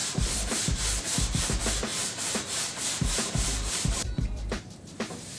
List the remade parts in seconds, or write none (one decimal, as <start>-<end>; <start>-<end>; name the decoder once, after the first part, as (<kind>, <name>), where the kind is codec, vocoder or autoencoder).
0.0-1.4 (vocoder, BigVGAN v2); 1.9-5.0